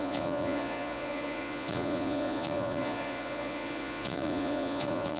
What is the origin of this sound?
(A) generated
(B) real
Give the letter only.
A